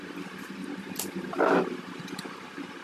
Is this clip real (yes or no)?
yes